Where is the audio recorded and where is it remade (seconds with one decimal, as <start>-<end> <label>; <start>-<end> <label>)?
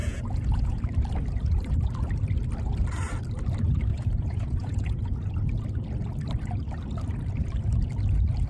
0.0-0.8 remade; 0.8-3.9 recorded; 3.9-5.3 remade; 5.3-8.5 recorded